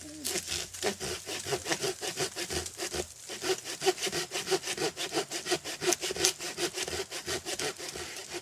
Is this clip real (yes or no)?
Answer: yes